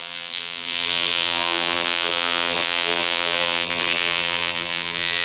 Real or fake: fake